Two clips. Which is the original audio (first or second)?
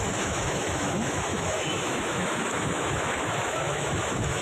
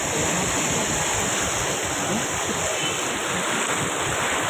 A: second